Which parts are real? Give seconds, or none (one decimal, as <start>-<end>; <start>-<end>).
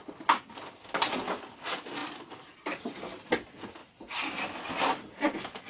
0.0-5.7